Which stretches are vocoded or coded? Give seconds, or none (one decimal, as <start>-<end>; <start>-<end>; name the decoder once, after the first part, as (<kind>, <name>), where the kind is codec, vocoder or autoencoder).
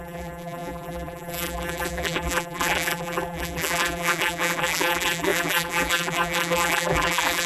0.0-7.5 (vocoder, BigVGAN v2)